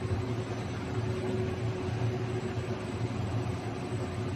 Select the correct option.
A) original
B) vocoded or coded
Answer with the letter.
A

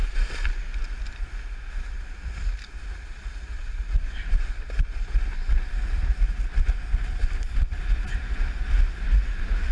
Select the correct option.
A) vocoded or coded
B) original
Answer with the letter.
B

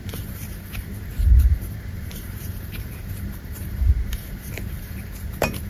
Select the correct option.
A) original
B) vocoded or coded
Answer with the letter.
B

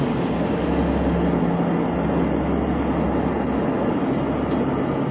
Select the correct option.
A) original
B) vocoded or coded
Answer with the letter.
A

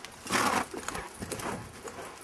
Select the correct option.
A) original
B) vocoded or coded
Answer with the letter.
A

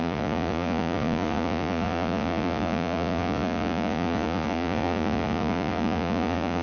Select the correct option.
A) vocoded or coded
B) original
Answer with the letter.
A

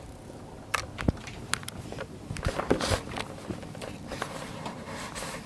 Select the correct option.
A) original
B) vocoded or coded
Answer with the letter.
A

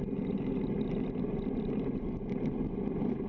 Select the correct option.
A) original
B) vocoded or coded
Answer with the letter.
A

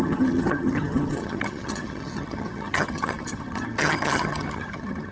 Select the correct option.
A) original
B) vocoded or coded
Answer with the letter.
B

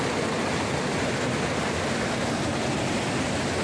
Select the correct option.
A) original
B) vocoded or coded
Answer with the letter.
A